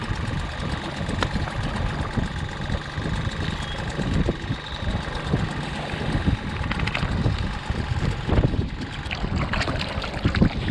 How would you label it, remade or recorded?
recorded